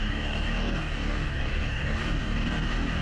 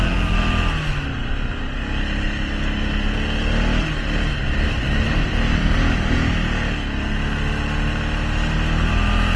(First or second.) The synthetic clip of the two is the first